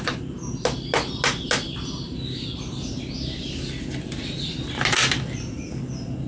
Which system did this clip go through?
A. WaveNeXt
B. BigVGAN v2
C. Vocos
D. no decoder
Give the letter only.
D